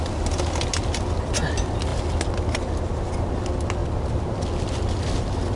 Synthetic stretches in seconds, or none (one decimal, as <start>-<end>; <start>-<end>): none